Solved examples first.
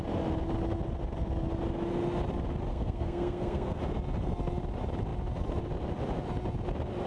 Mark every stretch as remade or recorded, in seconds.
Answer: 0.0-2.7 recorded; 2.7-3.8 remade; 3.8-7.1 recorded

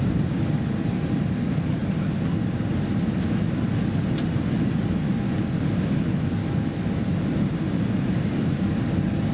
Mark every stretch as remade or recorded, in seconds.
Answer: 0.0-6.4 recorded; 6.4-6.9 remade; 6.9-9.3 recorded

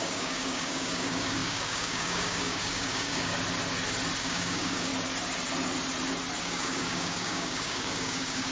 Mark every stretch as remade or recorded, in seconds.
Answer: 0.0-3.3 remade; 3.3-4.2 recorded; 4.2-4.9 remade; 4.9-6.4 recorded; 6.4-8.5 remade

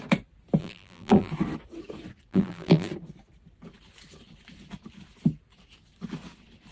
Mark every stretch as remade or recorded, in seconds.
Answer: 0.0-0.6 recorded; 0.6-1.3 remade; 1.3-2.3 recorded; 2.3-2.9 remade; 2.9-6.7 recorded

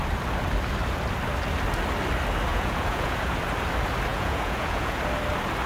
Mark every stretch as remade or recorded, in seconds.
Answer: 0.0-2.5 recorded; 2.5-3.4 remade; 3.4-4.1 recorded; 4.1-5.0 remade; 5.0-5.7 recorded

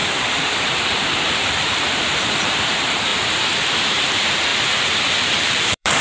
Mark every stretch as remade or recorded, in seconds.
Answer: 0.0-3.1 remade; 3.1-3.8 recorded; 3.8-6.0 remade

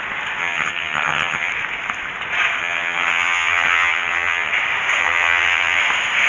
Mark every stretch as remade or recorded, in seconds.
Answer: 0.0-0.4 recorded; 0.4-1.5 remade; 1.5-2.6 recorded; 2.6-4.5 remade; 4.5-5.0 recorded; 5.0-5.8 remade; 5.8-6.3 recorded

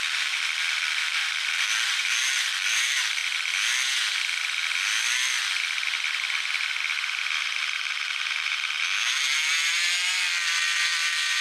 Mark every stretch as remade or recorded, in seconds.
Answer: 0.0-3.2 remade; 3.2-7.6 recorded; 7.6-11.4 remade